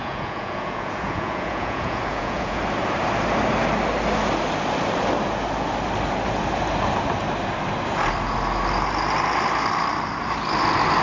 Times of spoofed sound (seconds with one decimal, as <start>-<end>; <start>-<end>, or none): 0.0-2.6